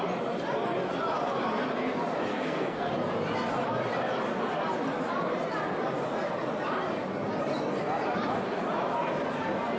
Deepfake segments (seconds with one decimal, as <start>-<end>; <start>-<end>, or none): 2.3-2.9